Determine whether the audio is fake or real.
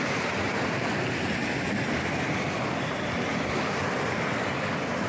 real